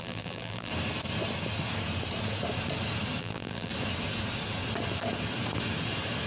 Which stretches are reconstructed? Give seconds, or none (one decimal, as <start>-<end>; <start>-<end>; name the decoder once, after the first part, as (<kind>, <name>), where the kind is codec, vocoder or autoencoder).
0.0-0.7 (vocoder, BigVGAN v2); 3.2-3.7